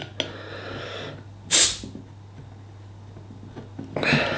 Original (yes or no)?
yes